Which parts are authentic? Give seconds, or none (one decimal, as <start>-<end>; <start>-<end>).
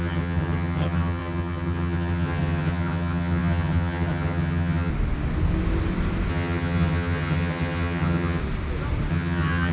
4.9-6.3; 8.4-9.1